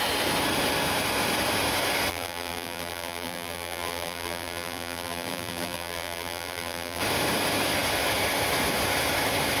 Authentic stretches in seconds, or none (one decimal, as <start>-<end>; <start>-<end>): 0.0-2.1; 7.0-9.6